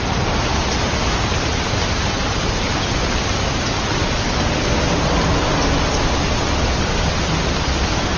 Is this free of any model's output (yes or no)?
yes